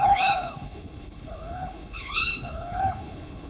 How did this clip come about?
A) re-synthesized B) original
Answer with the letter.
A